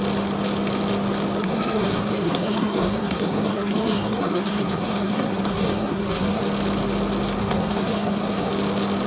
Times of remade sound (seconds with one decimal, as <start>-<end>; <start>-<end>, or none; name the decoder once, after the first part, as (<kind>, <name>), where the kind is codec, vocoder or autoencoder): 1.4-6.4 (codec, SNAC); 7.4-8.5